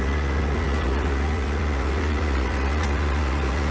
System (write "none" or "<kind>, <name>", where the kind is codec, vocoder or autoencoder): vocoder, Vocos